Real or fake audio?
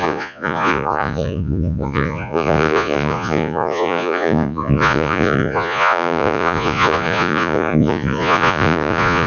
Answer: fake